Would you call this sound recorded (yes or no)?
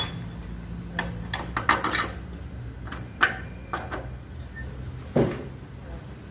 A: yes